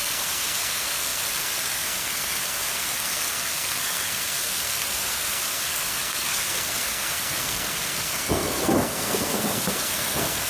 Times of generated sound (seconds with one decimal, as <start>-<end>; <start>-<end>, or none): 0.0-10.5